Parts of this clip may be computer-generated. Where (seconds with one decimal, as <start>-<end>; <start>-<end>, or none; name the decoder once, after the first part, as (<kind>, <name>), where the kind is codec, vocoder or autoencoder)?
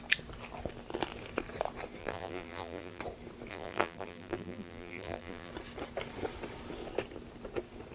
2.0-3.0 (vocoder, BigVGAN v2); 3.5-5.5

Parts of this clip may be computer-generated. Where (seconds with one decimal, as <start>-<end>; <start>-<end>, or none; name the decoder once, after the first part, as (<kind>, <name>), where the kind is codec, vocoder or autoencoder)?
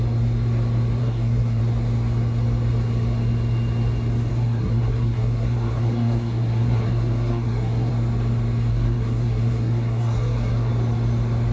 1.0-1.6 (codec, SNAC); 4.3-7.9; 8.7-10.7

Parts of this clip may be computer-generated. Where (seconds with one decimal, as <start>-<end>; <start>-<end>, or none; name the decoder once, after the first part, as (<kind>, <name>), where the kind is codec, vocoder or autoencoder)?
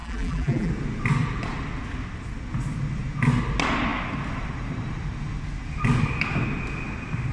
0.0-0.7 (vocoder, BigVGAN v2)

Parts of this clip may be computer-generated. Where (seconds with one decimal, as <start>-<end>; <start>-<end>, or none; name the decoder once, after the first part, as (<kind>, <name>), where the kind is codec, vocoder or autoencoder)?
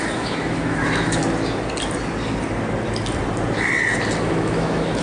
0.0-1.2 (autoencoder, DAC-VAE); 4.2-5.0